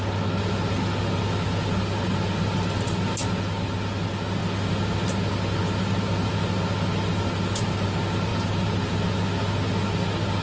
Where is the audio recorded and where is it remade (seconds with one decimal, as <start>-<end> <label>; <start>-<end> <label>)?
0.0-10.4 recorded